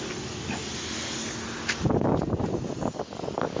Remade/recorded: recorded